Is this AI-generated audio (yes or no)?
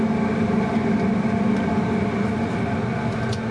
no